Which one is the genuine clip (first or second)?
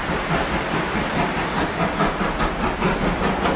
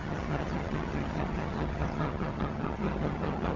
first